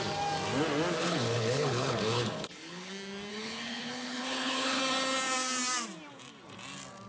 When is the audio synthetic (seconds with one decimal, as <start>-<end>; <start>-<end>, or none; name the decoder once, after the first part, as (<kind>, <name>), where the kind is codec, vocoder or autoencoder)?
1.0-2.9 (codec, HILCodec); 3.3-4.8